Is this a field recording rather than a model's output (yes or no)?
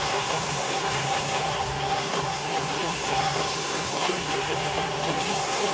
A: no